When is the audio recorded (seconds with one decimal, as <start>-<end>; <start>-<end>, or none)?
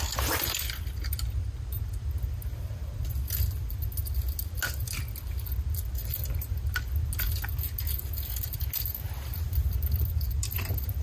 0.0-11.0